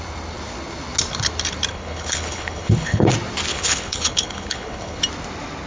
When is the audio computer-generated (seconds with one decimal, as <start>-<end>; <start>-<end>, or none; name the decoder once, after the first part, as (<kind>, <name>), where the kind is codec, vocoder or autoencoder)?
1.7-3.1 (codec, HILCodec); 3.5-5.0